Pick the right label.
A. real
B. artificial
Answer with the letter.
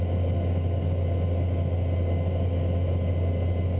A